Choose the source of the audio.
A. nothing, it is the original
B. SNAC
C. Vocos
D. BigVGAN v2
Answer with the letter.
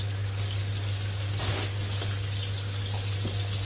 A